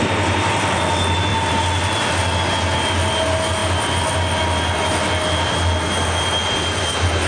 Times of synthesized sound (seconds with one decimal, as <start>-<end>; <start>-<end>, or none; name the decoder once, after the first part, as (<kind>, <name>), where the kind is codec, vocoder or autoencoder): none